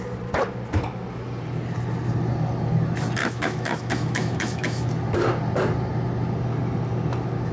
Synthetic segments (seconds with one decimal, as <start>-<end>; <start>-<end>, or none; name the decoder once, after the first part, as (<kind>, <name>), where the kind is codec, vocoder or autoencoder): 3.2-4.9 (autoencoder, DAC-VAE)